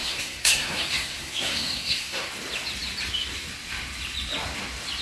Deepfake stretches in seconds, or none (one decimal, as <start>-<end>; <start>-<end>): 0.0-2.3